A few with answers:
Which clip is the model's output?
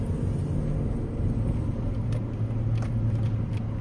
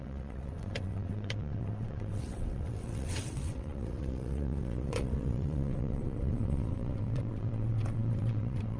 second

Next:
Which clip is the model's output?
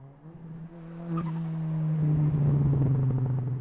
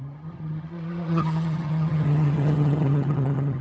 second